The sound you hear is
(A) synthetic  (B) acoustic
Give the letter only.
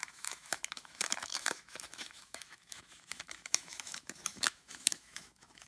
A